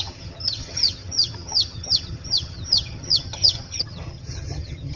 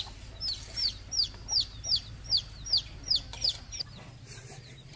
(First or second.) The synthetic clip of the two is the first